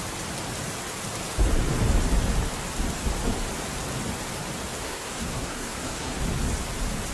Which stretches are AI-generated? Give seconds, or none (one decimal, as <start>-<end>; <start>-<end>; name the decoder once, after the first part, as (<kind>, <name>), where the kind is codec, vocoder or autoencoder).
4.8-6.2 (codec, SNAC)